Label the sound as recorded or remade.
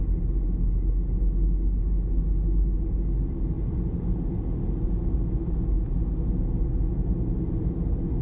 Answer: recorded